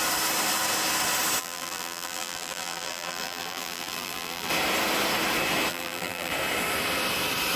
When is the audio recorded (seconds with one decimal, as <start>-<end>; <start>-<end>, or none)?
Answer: 0.0-1.4; 4.5-5.7; 6.3-7.6